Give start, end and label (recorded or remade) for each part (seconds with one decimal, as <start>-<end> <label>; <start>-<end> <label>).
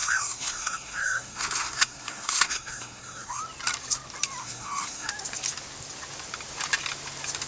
0.0-3.4 remade; 3.4-4.4 recorded; 4.4-5.1 remade; 5.1-7.5 recorded